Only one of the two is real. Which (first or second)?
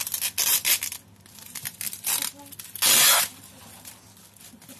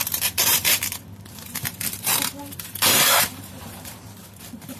first